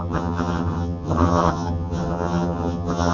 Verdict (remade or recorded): remade